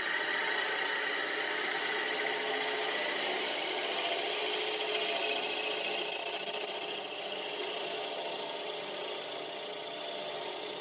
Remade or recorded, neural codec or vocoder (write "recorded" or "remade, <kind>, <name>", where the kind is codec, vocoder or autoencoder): recorded